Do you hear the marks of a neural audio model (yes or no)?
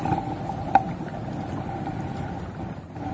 yes